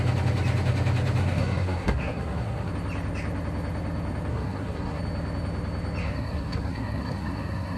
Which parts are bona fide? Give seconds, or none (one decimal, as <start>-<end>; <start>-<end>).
0.0-1.2; 2.7-4.3; 5.0-6.0